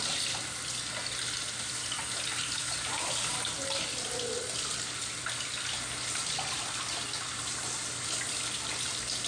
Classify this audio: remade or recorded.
recorded